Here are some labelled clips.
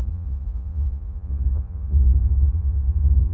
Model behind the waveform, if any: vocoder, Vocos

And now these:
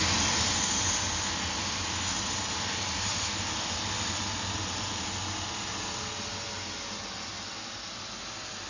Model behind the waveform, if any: none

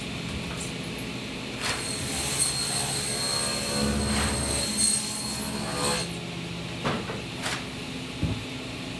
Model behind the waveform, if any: none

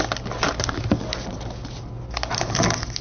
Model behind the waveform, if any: none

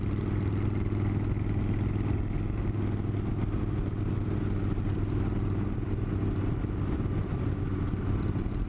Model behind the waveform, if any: none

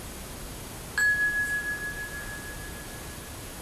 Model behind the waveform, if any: none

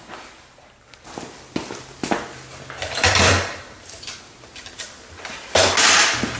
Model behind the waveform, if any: none